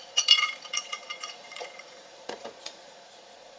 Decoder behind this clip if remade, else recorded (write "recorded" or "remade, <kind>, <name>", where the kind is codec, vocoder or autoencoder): remade, vocoder, Vocos